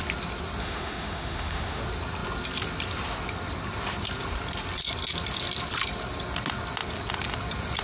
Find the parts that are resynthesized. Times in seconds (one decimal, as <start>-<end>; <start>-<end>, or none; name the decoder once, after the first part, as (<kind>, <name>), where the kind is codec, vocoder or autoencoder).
0.6-1.8 (autoencoder, DAC-VAE)

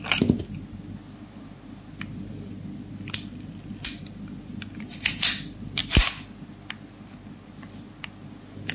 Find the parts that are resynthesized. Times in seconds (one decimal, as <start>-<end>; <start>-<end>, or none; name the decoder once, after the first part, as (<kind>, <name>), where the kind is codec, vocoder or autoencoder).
none

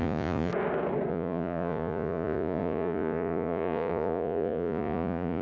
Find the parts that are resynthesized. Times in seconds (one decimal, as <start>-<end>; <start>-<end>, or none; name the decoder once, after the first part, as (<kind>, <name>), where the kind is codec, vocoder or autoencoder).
0.0-0.5 (vocoder, Vocos); 1.1-5.4

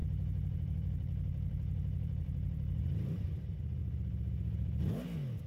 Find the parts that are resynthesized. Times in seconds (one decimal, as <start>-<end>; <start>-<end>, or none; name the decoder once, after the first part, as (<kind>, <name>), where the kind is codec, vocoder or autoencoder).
0.0-3.3 (vocoder, BigVGAN v2); 3.8-4.8

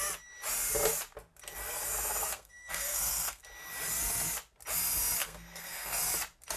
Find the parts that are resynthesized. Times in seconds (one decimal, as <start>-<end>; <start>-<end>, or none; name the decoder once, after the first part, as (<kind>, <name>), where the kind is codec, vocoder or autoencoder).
2.2-3.4 (codec, SNAC); 5.2-6.0

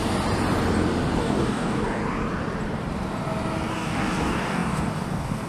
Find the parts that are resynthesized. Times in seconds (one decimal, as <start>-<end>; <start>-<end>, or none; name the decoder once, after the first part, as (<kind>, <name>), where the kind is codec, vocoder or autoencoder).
1.2-2.0 (codec, DAC); 3.7-5.5

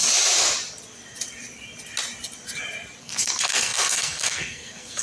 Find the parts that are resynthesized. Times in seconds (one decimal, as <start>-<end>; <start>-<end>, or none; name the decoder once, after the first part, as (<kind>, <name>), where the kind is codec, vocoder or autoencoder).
3.0-5.0 (codec, SNAC)